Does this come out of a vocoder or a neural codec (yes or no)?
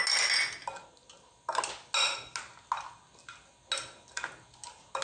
no